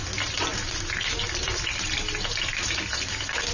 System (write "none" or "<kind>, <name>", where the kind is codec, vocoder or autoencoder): vocoder, BigVGAN v2